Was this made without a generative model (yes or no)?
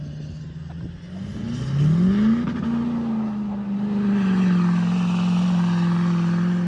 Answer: yes